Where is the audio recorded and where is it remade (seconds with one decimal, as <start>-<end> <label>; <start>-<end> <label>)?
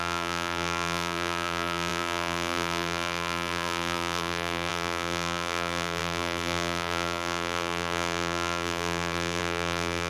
0.0-10.1 remade